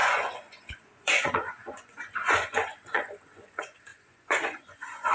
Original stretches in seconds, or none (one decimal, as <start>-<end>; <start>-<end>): none